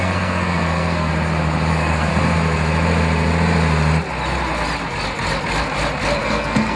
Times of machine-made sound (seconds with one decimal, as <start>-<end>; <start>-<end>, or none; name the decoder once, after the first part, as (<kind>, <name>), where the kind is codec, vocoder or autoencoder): 0.0-1.1 (codec, SNAC); 1.7-2.1; 6.2-6.8